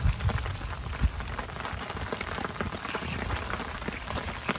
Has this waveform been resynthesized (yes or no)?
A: no